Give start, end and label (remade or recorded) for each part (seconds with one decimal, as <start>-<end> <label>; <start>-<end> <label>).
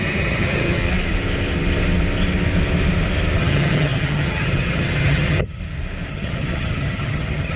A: 0.0-0.8 remade; 0.8-3.4 recorded; 3.4-5.6 remade; 5.6-6.1 recorded; 6.1-7.6 remade